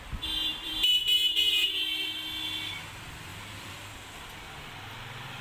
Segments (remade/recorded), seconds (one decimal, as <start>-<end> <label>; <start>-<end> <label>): 0.0-0.5 recorded; 0.5-1.8 remade; 1.8-3.3 recorded; 3.3-4.3 remade; 4.3-5.4 recorded